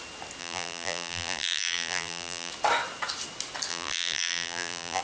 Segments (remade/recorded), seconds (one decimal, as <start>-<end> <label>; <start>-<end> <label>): 0.0-0.4 recorded; 0.4-2.5 remade; 2.5-3.7 recorded; 3.7-5.0 remade